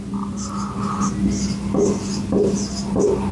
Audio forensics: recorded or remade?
recorded